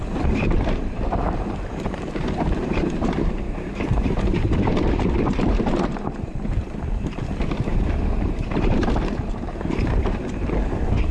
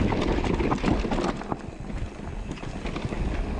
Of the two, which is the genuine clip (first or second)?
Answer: second